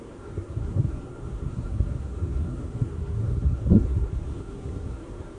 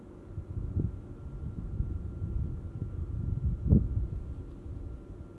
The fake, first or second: first